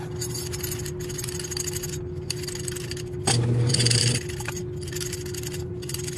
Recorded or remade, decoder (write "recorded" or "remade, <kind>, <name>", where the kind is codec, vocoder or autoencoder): recorded